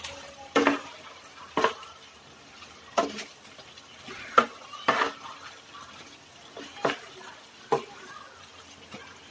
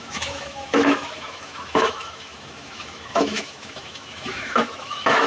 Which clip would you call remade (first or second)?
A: second